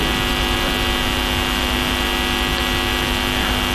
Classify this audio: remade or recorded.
recorded